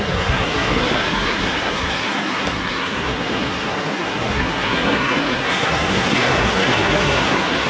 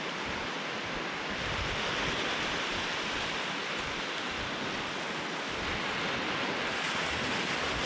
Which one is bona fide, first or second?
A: second